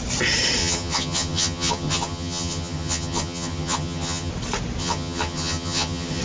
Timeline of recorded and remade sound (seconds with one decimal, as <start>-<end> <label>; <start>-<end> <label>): 0.0-0.6 recorded; 0.6-4.3 remade; 4.3-4.8 recorded; 4.8-6.2 remade